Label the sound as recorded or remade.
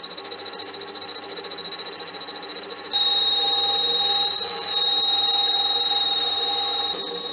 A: recorded